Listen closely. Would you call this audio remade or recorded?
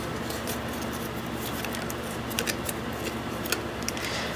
recorded